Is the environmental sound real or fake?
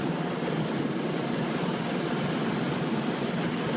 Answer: fake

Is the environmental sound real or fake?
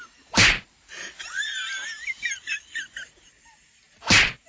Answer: fake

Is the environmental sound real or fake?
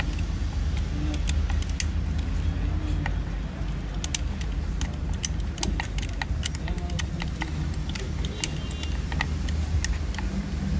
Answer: real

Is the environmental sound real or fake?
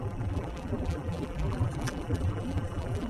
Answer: fake